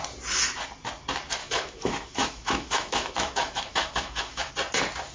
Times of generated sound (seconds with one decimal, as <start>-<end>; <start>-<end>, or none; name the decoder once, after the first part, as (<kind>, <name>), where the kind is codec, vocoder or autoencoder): 1.4-4.5 (autoencoder, DAC-VAE)